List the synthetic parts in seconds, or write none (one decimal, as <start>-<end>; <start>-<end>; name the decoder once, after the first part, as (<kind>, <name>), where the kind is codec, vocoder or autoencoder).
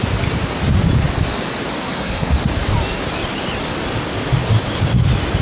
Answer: 1.7-2.4 (codec, SNAC)